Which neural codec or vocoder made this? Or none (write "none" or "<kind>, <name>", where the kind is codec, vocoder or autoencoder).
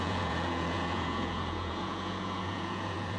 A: vocoder, Vocos